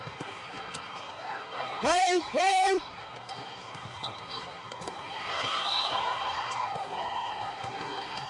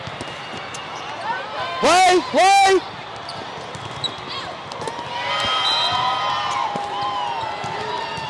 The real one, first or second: second